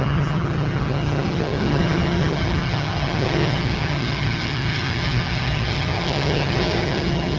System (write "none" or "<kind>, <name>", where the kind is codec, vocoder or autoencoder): vocoder, HiFi-GAN